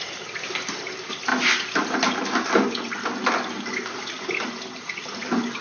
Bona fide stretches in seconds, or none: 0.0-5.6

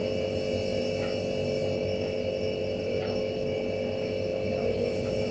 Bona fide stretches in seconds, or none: 0.0-5.3

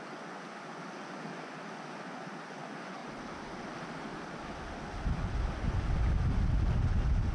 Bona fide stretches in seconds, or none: 3.0-7.3